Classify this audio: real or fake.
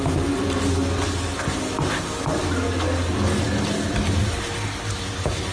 real